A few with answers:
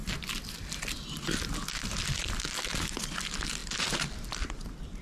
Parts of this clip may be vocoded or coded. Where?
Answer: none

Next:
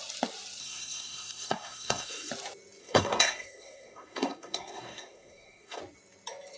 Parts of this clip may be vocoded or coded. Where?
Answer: 0.6-2.3 (codec, SNAC); 2.8-5.8

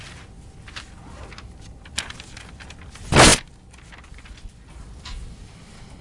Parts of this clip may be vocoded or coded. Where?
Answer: none

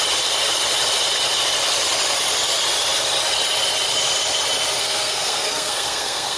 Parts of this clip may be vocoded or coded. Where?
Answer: 4.8-6.4 (codec, SNAC)